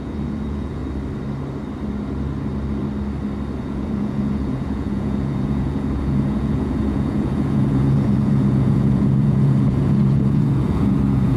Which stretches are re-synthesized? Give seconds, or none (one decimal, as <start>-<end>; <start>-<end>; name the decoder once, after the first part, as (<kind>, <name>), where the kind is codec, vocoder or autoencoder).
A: 0.0-0.8 (vocoder, Vocos); 3.6-11.4